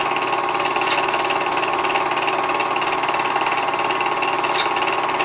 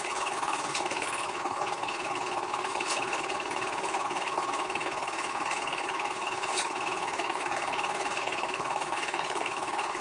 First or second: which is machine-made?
second